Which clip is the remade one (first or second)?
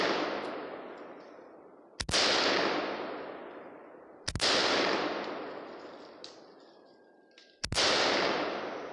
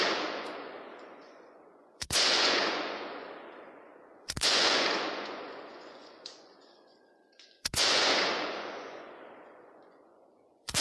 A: second